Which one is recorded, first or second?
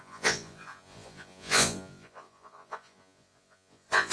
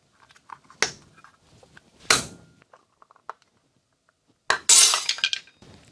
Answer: second